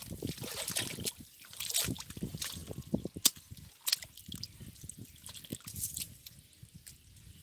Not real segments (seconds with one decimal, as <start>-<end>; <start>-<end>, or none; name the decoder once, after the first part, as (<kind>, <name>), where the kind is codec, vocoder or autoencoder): none